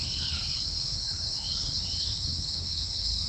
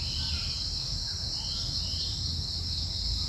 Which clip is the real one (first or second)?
second